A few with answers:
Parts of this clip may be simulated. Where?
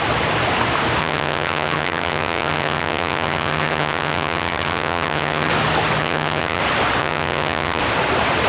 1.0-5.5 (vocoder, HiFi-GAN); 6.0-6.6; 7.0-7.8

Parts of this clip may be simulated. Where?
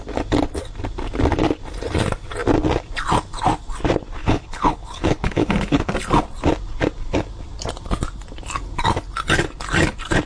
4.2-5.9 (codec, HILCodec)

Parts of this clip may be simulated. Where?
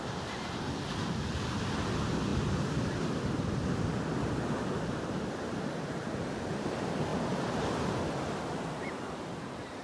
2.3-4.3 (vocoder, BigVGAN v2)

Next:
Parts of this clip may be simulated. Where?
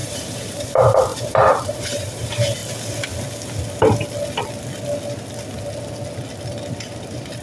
0.0-2.6 (vocoder, BigVGAN v2); 7.0-7.4